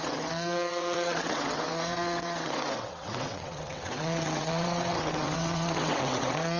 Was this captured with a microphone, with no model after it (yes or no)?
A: no